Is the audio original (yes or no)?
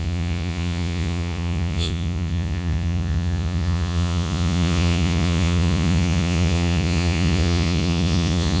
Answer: no